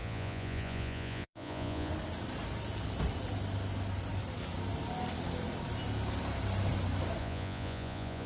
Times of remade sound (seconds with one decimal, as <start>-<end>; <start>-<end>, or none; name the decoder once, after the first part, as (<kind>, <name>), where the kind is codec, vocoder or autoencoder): 0.0-1.9 (vocoder, Vocos); 7.2-8.3